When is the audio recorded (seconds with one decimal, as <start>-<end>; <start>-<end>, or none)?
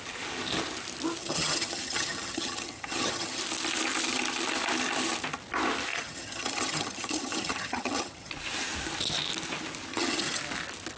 0.0-1.2; 3.4-5.9; 8.3-9.9; 10.4-11.0